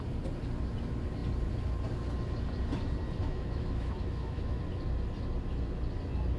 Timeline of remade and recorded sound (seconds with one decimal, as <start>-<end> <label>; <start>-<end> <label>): 0.0-3.2 recorded; 3.2-4.6 remade; 4.6-6.4 recorded